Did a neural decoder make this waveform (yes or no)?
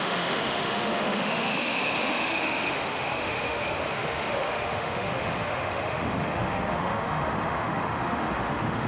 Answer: yes